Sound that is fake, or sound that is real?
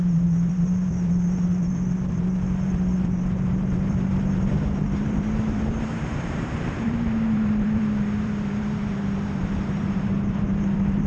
fake